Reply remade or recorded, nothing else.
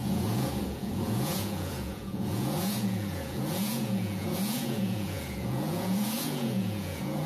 remade